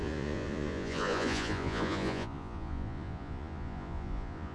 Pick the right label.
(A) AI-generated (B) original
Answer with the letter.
A